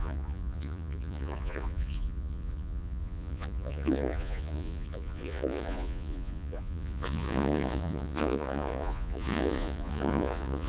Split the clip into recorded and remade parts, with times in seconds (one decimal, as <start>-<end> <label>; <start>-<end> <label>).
0.0-10.7 remade